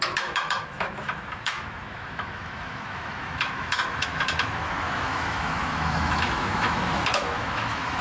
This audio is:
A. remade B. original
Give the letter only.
A